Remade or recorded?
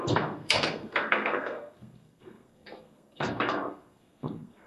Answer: remade